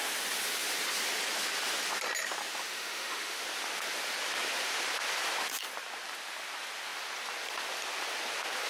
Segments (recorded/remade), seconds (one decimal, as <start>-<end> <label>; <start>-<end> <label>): 0.0-2.4 recorded; 2.4-3.4 remade; 3.4-8.7 recorded